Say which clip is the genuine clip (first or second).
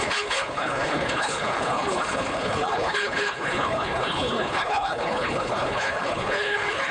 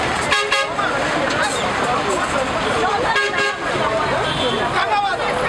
second